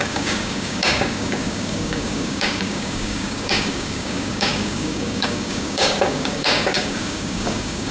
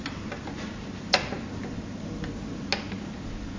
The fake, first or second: first